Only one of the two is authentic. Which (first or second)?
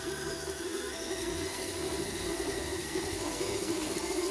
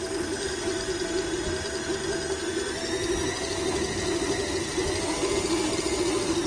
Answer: second